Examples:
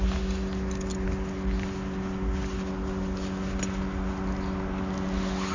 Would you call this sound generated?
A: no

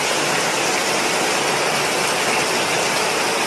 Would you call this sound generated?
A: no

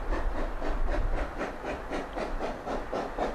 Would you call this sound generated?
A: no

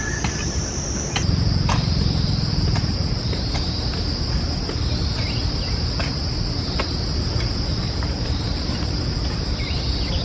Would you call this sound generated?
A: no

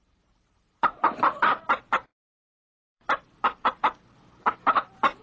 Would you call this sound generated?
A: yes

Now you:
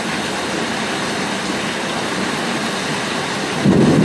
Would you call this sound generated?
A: no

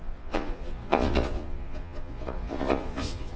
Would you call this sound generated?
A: yes